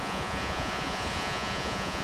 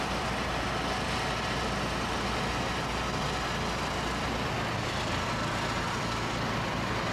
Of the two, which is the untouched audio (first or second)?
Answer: second